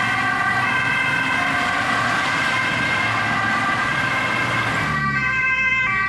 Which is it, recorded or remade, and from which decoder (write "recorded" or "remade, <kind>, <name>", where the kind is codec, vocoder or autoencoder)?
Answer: recorded